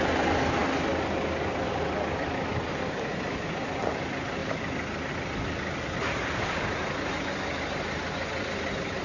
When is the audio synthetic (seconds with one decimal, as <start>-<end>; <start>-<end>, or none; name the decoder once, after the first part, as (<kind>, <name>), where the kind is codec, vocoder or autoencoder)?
none